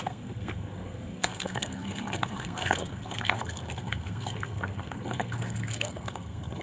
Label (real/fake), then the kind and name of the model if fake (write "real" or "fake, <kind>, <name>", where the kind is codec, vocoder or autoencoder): fake, codec, SNAC